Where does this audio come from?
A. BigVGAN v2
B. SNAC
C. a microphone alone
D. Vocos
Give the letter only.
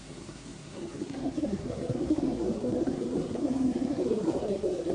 B